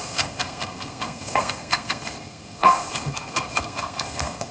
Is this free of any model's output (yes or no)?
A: no